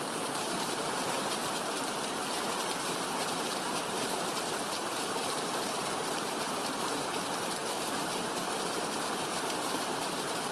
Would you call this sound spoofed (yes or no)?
yes